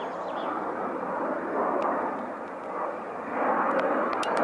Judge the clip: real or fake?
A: real